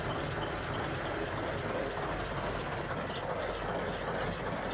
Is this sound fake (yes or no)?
no